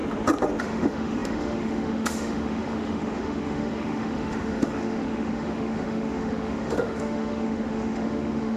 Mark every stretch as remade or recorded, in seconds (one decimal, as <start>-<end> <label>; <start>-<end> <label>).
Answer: 0.0-0.6 recorded; 0.6-8.6 remade